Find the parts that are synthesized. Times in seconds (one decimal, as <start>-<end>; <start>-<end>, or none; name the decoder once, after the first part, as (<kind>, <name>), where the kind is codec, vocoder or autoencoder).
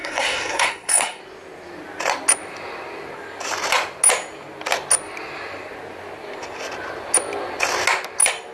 0.0-1.2 (codec, SNAC)